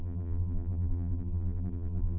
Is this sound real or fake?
fake